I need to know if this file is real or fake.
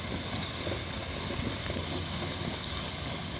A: real